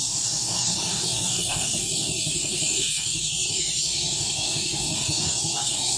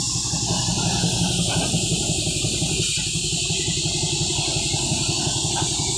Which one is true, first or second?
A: second